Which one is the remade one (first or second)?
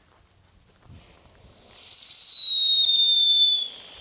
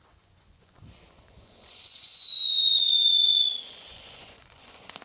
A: second